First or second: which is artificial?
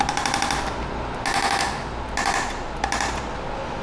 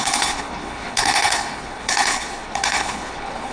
second